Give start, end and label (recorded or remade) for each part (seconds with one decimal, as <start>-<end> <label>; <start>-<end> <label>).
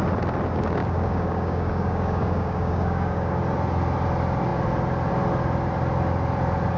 0.0-0.8 recorded; 0.8-3.4 remade; 3.4-6.8 recorded